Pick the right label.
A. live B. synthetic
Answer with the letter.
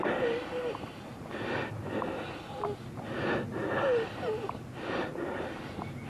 A